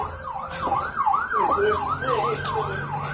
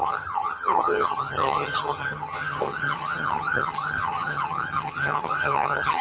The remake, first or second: second